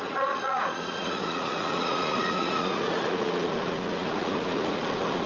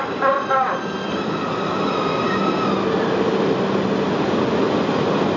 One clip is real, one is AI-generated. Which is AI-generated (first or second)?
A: first